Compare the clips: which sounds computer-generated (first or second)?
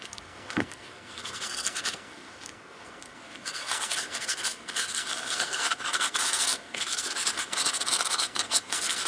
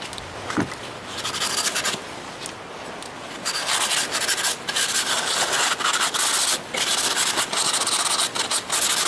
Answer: first